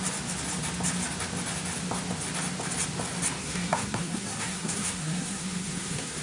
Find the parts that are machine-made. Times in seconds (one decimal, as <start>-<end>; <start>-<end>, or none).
3.4-6.2